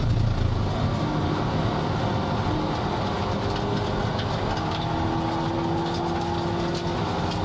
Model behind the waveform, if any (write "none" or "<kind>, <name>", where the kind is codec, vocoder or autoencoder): none